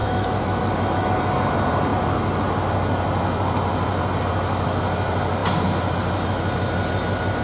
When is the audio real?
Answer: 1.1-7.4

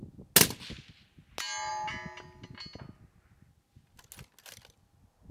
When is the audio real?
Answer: 0.0-5.3

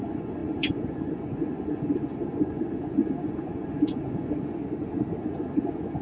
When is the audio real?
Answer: 4.6-5.2

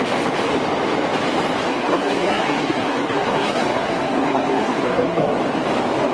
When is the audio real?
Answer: 0.0-1.7; 5.4-6.1

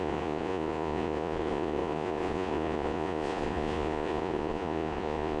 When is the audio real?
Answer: none

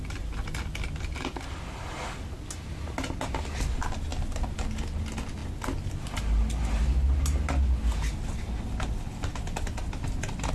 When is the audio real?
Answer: 0.0-10.5

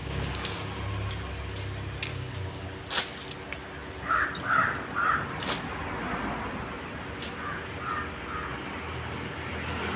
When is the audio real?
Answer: 0.8-2.1; 2.8-10.0